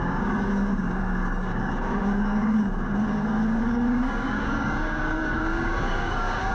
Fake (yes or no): yes